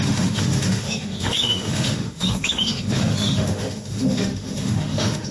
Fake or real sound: fake